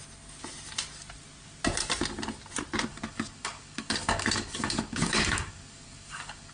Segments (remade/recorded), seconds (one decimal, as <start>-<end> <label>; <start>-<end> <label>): 0.0-2.9 recorded; 2.9-6.5 remade